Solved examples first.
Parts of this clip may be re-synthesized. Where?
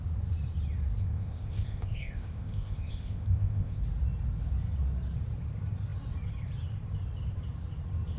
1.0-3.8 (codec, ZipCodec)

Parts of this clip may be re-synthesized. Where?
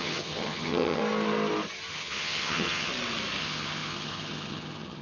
0.0-1.0 (vocoder, HiFi-GAN); 1.9-2.9; 3.4-5.0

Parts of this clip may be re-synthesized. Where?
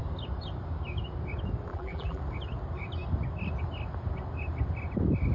1.7-2.2 (vocoder, BigVGAN v2)